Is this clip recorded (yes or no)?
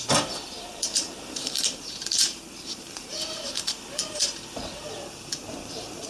no